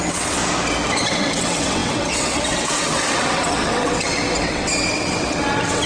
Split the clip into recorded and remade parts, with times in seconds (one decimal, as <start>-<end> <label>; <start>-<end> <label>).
0.0-0.4 remade; 0.4-1.0 recorded; 1.0-5.9 remade